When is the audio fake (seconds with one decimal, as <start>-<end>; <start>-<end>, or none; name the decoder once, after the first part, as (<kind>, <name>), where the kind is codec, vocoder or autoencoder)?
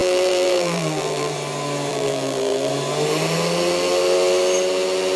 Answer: 0.0-1.3 (vocoder, BigVGAN v2); 1.9-2.7